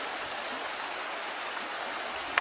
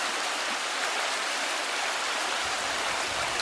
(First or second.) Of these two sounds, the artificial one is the second